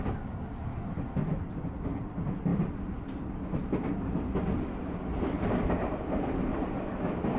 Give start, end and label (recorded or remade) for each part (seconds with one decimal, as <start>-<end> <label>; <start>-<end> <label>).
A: 0.0-7.4 recorded